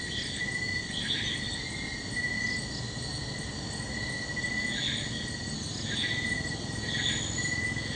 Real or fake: real